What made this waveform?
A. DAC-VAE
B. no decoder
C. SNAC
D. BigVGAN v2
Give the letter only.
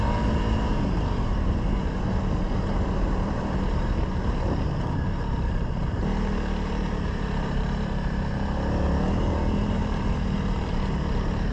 D